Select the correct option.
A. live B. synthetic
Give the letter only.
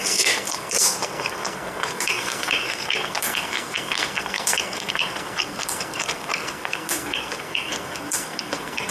B